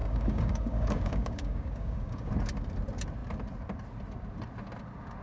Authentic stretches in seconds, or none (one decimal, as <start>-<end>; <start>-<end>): 2.3-5.2